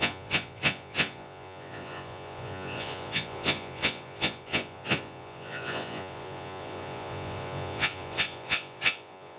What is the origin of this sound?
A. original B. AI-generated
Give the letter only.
B